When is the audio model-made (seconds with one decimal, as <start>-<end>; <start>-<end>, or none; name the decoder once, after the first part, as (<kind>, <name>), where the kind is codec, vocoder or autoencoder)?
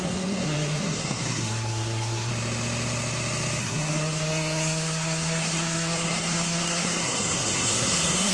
0.0-2.3 (codec, SNAC); 3.6-8.3